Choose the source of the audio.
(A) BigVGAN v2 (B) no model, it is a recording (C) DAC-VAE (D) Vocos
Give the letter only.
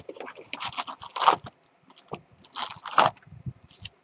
B